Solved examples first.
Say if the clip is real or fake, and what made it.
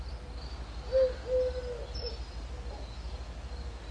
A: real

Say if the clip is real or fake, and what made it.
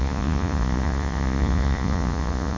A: fake, vocoder, Vocos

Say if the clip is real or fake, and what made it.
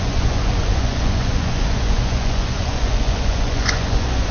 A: fake, vocoder, Vocos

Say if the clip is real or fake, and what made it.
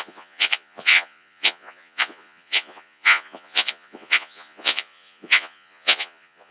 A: fake, vocoder, Vocos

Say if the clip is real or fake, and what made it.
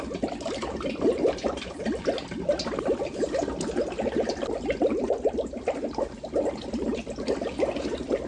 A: real